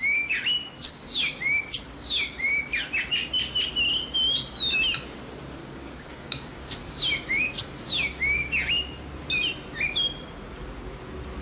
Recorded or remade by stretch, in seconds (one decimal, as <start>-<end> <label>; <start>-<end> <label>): 0.0-5.6 recorded; 5.6-6.7 remade; 6.7-11.4 recorded